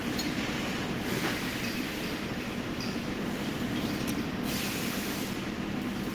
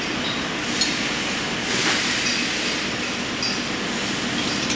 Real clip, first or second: second